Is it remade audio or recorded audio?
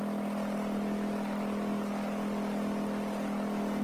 recorded